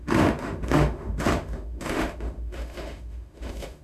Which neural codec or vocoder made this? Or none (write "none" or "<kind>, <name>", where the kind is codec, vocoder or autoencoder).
autoencoder, DAC-VAE